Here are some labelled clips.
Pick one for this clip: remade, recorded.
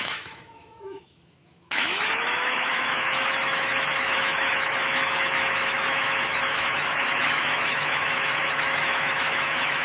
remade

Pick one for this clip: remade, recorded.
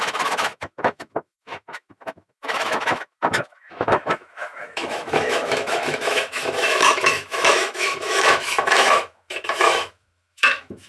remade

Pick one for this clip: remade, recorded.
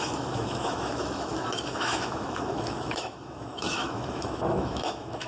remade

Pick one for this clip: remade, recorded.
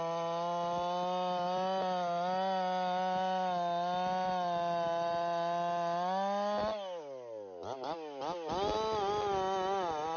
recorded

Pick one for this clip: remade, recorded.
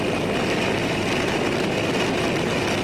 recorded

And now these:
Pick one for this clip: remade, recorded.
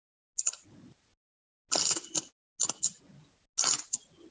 recorded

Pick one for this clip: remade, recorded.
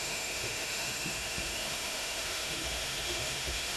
remade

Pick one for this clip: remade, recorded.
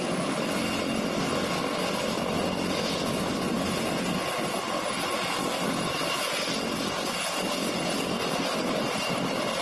recorded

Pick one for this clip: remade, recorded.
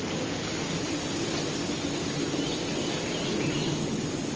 recorded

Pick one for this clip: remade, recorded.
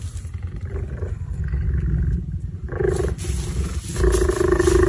recorded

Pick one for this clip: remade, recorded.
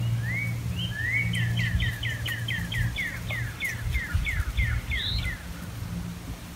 recorded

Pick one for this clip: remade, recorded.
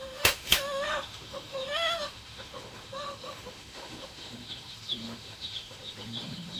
remade